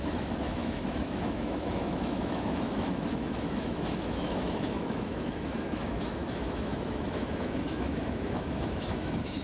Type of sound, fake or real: fake